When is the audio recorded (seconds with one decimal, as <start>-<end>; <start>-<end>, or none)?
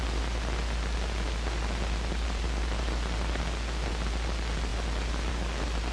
0.0-5.9